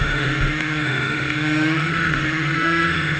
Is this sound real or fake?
fake